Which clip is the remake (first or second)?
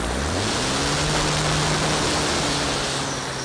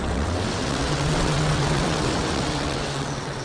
second